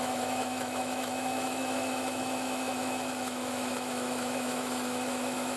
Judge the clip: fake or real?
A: fake